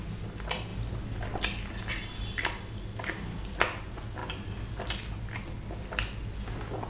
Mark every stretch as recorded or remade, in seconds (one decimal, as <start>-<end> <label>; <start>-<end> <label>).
0.0-6.9 recorded